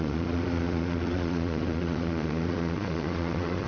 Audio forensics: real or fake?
fake